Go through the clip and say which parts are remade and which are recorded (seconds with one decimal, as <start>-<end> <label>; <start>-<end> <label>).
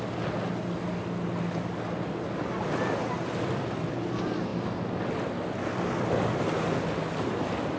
0.0-7.8 recorded